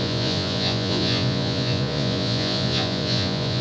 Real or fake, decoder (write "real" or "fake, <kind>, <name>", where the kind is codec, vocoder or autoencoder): fake, vocoder, Vocos